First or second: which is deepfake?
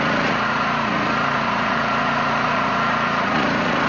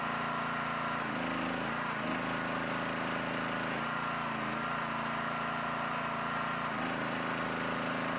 first